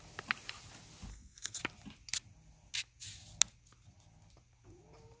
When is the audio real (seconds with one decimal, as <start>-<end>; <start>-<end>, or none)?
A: 0.0-1.1; 1.6-5.2